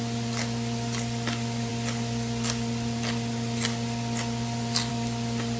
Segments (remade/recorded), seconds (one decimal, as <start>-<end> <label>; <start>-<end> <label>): 0.0-5.6 recorded